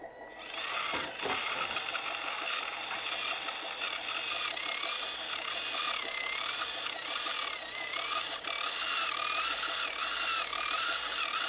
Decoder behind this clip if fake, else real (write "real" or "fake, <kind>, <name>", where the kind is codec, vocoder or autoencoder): real